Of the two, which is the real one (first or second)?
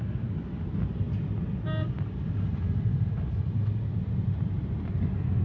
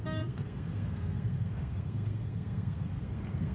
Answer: first